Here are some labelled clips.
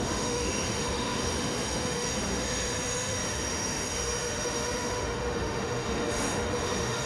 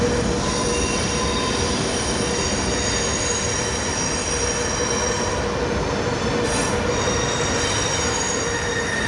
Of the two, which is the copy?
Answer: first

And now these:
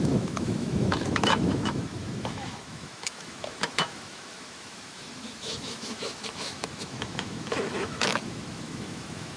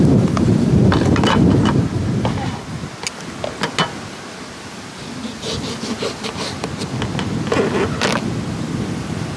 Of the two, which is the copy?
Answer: first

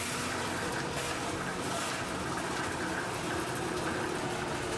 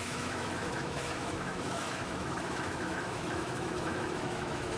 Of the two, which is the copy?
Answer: second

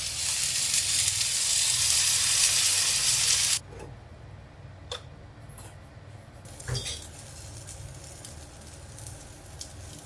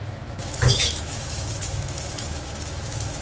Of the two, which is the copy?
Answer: second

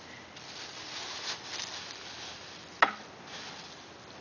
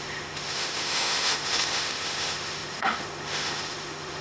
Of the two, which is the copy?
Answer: second